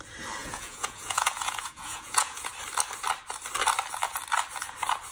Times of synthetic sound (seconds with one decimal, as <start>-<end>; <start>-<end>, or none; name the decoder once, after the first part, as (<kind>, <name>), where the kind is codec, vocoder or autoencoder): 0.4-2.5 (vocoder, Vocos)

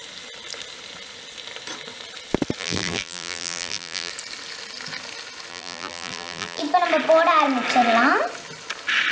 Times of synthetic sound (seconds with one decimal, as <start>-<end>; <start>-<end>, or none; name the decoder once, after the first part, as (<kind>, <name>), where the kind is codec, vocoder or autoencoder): 2.6-4.1 (vocoder, BigVGAN v2); 5.5-6.6

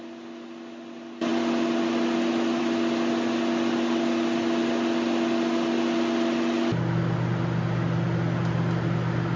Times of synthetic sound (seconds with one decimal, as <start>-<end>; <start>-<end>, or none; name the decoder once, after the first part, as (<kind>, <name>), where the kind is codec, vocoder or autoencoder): none